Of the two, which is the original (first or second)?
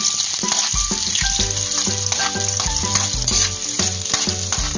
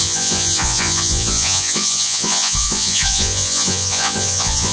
first